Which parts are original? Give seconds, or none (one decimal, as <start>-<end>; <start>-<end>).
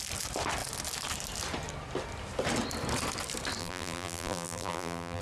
0.0-3.6